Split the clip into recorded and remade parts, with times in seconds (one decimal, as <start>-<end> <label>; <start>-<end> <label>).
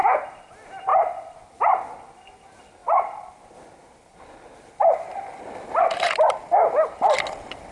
0.0-7.7 recorded